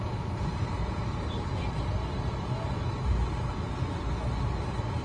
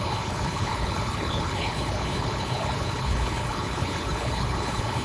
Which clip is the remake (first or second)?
second